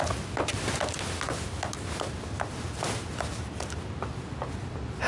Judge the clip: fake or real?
real